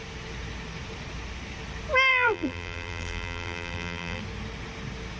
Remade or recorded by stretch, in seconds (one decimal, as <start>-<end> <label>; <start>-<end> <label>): 0.0-2.1 recorded; 2.1-4.2 remade; 4.2-5.2 recorded